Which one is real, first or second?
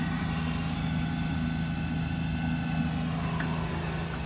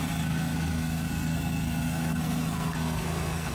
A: first